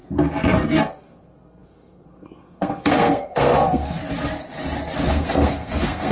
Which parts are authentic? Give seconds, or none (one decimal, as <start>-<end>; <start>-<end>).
0.0-1.0; 4.0-5.1